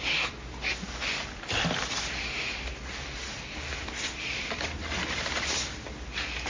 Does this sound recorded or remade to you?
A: recorded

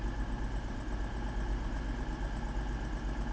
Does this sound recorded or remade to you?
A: recorded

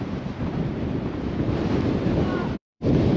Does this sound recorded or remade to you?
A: remade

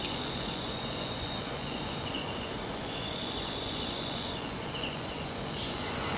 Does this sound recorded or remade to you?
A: remade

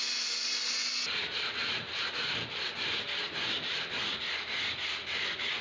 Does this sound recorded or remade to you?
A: recorded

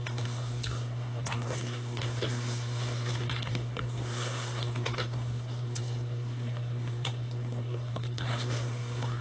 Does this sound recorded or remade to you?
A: remade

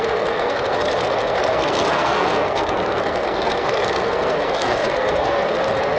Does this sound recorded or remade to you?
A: remade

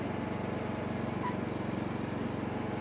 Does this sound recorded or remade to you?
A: recorded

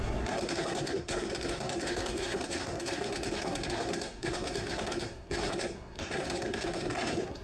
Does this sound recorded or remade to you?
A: remade